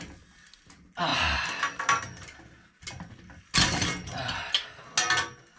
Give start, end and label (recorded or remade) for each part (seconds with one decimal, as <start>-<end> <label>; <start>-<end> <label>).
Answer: 0.0-5.6 recorded